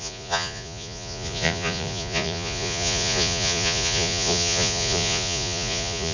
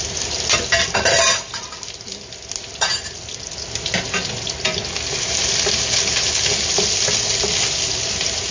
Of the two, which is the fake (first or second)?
first